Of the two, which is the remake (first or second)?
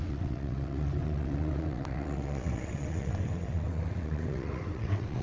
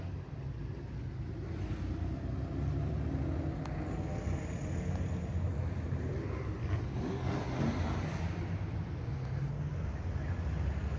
first